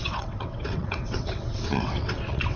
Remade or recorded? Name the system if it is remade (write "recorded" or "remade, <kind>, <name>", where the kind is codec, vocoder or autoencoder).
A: remade, vocoder, WaveNeXt